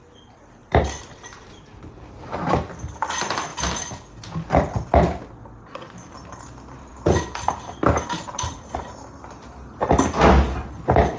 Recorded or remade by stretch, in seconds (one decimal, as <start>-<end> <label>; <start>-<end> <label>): 0.0-0.6 recorded; 0.6-2.5 remade; 2.5-6.8 recorded; 6.8-8.9 remade; 8.9-11.2 recorded